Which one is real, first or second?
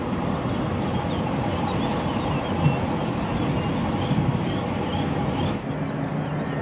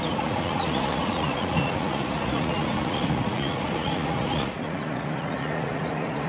first